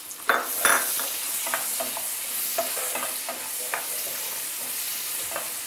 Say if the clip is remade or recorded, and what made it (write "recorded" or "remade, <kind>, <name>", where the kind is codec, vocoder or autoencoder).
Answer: recorded